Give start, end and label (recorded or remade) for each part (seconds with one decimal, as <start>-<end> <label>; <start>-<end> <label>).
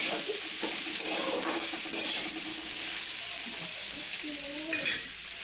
0.0-0.9 recorded; 0.9-1.8 remade; 1.8-2.5 recorded; 2.5-3.3 remade; 3.3-3.7 recorded; 3.7-4.3 remade; 4.3-5.4 recorded